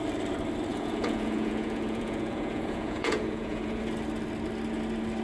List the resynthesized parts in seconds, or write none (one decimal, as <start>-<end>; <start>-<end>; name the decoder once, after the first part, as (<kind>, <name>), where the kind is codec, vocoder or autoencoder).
0.7-3.8 (vocoder, Vocos)

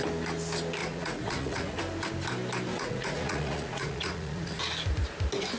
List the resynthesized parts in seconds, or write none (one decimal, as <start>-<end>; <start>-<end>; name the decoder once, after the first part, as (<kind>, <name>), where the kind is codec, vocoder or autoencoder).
0.8-1.8 (vocoder, Vocos); 2.7-4.6